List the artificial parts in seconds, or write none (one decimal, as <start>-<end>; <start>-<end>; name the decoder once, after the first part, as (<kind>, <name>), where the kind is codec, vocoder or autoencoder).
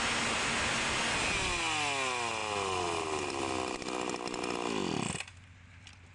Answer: none